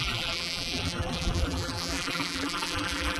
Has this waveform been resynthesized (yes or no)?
yes